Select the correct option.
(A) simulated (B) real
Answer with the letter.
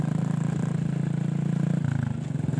B